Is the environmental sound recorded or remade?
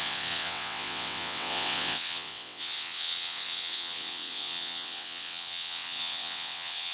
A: remade